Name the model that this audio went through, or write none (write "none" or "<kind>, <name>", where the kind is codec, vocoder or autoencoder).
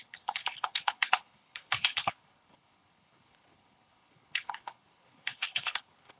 codec, HILCodec